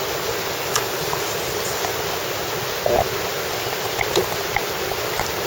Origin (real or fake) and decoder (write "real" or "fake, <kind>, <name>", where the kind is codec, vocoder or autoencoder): real